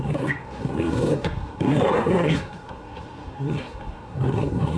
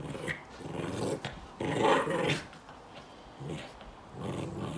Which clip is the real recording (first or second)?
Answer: second